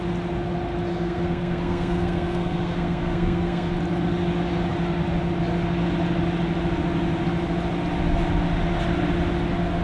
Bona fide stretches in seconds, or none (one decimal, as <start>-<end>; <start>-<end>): 0.0-0.9; 3.7-9.8